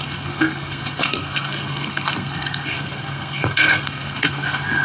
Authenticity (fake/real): fake